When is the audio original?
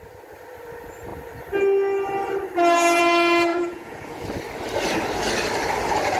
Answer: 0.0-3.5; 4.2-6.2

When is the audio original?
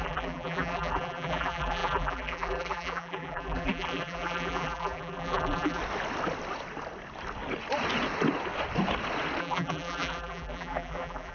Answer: 5.8-9.4